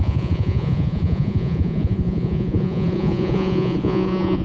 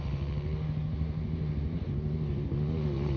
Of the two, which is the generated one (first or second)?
first